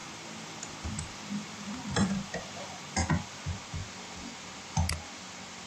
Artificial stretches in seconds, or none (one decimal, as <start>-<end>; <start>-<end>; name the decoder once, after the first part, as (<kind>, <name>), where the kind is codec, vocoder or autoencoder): 0.0-3.4 (vocoder, BigVGAN v2)